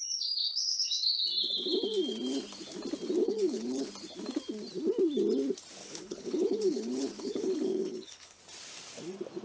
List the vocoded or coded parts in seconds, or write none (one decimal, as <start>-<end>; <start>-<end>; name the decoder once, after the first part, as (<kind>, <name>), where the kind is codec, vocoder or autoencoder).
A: 0.4-1.2 (codec, HILCodec); 3.2-3.9; 5.8-8.4